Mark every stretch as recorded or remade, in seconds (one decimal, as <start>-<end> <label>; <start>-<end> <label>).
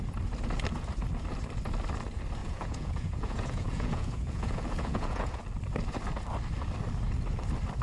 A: 0.0-2.4 recorded; 2.4-5.4 remade; 5.4-7.8 recorded